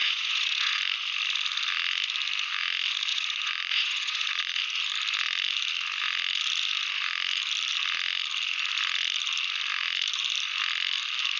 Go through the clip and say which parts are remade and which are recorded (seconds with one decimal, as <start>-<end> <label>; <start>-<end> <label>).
0.0-0.8 remade; 0.8-3.1 recorded; 3.1-4.6 remade; 4.6-11.4 recorded